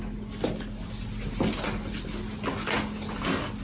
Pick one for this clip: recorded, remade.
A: recorded